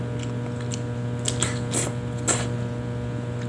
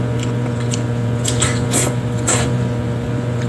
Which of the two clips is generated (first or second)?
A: second